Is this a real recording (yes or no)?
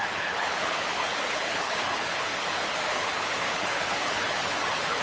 no